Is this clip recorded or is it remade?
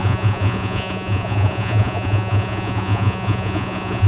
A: remade